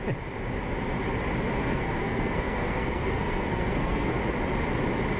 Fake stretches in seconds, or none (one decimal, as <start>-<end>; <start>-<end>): 1.6-4.1